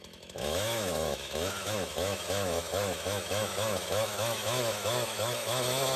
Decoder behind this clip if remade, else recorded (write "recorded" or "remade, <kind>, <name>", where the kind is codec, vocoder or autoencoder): remade, autoencoder, DAC-VAE